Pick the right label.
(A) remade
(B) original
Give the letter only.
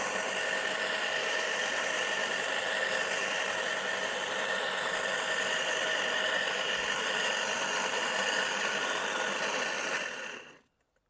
B